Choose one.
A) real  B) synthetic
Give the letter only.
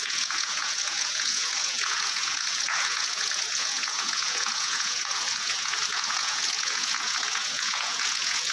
B